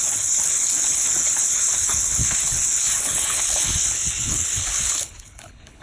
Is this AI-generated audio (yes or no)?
yes